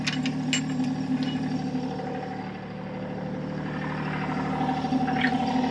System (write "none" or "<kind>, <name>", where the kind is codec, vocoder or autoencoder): none